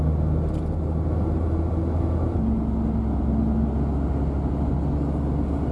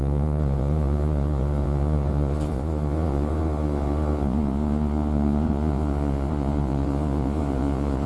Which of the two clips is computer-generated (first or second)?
second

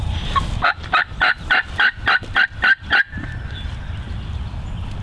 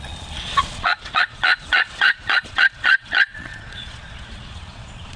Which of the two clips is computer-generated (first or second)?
second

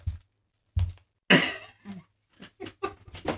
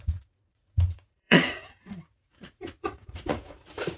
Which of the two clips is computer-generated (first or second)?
second